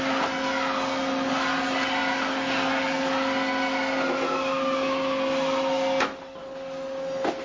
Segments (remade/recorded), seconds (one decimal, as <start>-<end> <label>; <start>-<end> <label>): 0.0-7.4 recorded